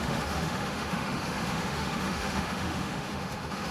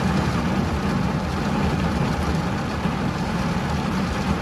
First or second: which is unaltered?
second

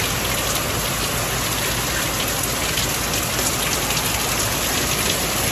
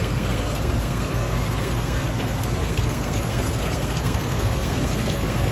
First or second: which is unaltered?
first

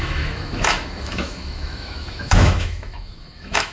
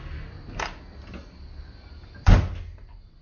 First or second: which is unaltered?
second